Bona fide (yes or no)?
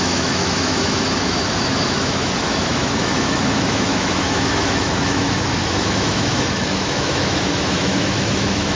no